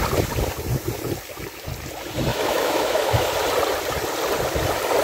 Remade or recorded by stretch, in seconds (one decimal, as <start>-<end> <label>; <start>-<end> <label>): 0.0-2.3 recorded; 2.3-3.3 remade; 3.3-5.0 recorded